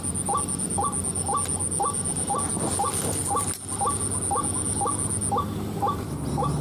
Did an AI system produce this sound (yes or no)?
no